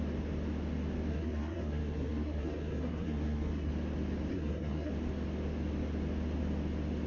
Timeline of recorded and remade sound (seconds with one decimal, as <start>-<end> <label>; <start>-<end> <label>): 0.0-1.1 recorded; 1.1-3.7 remade; 3.7-4.3 recorded; 4.3-4.9 remade; 4.9-7.1 recorded